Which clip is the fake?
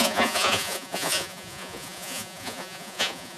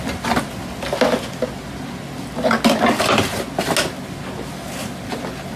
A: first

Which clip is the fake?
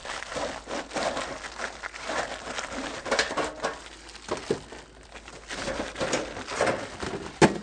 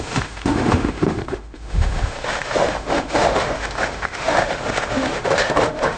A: second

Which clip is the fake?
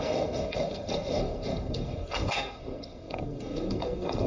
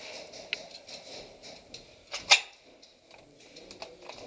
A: first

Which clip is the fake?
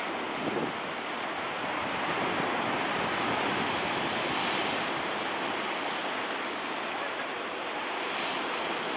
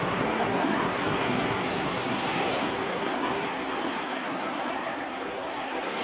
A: second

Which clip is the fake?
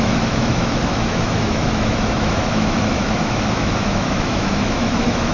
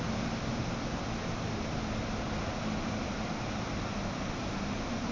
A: first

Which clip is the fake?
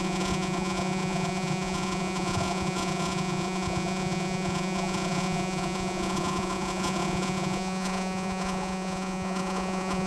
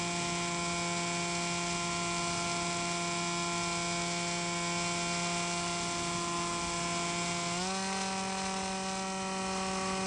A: first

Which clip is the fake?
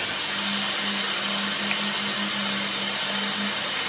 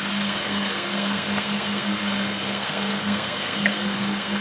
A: second